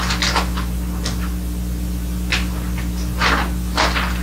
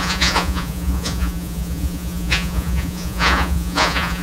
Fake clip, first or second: second